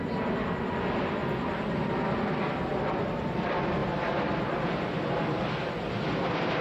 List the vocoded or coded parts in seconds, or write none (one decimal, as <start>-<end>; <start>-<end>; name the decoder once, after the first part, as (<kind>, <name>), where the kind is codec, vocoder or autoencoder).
1.2-1.8 (vocoder, BigVGAN v2); 3.8-5.1

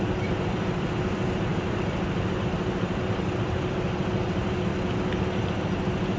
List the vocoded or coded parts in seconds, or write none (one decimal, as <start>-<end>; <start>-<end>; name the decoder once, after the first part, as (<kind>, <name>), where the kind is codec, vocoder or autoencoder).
0.0-4.7 (vocoder, BigVGAN v2)

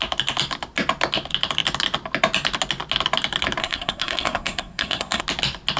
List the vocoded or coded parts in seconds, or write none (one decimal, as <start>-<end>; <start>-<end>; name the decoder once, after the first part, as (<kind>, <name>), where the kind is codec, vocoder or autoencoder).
3.6-5.2 (codec, SNAC)